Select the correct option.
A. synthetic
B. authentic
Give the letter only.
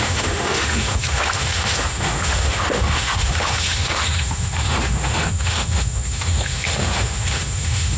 A